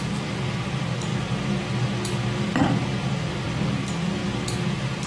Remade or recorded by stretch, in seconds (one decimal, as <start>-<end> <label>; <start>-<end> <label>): 0.0-1.1 remade; 1.1-2.6 recorded; 2.6-5.1 remade